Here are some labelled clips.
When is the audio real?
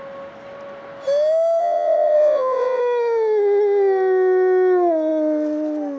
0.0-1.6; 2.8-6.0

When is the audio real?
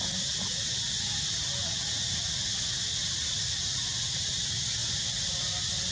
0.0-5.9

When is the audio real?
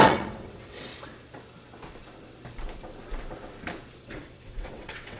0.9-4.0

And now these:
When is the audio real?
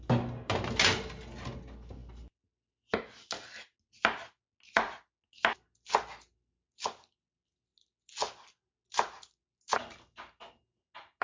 0.0-11.2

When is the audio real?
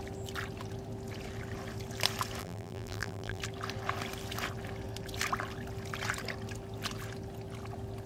0.0-2.4; 3.4-8.1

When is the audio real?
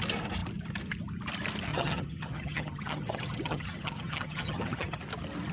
0.0-1.7; 5.0-5.5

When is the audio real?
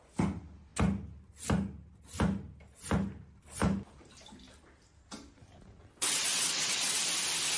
0.0-5.9; 7.0-7.6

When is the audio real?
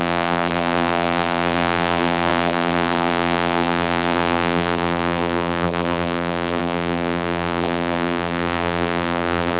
none